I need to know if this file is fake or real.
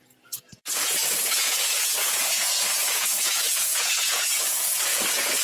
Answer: fake